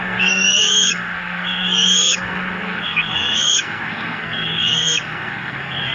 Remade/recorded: remade